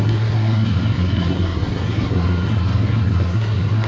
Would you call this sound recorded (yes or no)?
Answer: no